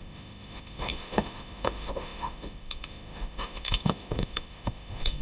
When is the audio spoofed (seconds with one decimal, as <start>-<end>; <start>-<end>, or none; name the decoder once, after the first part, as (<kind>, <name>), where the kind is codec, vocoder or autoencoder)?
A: 0.0-5.2 (autoencoder, DAC-VAE)